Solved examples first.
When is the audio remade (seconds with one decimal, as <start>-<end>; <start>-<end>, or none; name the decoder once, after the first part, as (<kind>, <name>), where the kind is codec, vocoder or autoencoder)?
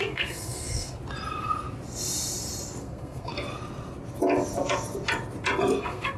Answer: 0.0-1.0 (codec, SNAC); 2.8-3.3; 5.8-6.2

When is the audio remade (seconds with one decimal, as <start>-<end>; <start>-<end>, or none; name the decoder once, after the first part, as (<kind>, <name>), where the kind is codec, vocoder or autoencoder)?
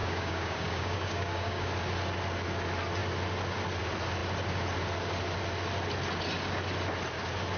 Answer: 0.0-1.7 (codec, DAC)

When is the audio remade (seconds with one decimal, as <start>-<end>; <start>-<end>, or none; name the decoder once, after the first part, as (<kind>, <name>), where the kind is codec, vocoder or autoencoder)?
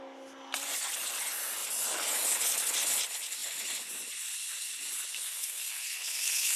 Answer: 5.1-6.6 (codec, SNAC)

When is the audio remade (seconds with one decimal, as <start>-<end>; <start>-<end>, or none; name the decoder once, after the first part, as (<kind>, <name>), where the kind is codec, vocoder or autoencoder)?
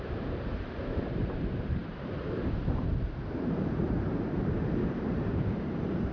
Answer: 0.0-6.1 (vocoder, BigVGAN v2)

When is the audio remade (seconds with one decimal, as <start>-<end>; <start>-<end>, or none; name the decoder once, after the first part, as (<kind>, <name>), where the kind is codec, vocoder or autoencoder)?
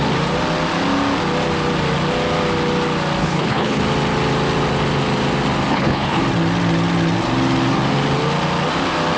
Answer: 3.2-3.8 (codec, HILCodec); 5.7-6.2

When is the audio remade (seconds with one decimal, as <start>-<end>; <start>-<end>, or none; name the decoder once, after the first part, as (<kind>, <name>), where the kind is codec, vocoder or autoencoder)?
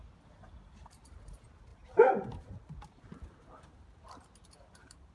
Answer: 1.7-5.1 (vocoder, BigVGAN v2)